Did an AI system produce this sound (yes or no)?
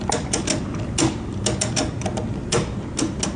no